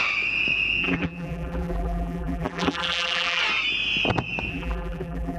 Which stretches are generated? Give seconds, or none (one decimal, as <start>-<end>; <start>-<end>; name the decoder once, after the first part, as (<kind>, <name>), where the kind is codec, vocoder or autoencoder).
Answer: 0.8-3.4 (vocoder, BigVGAN v2); 4.5-5.4